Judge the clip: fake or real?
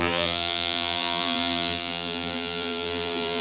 fake